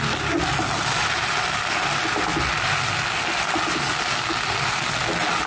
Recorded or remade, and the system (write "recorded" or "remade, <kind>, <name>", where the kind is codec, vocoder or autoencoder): recorded